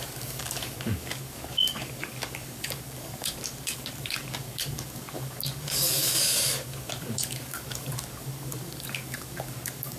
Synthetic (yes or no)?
yes